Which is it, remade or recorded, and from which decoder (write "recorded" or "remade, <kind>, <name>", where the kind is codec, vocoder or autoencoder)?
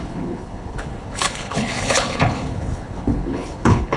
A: remade, codec, HILCodec